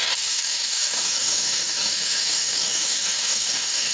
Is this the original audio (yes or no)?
no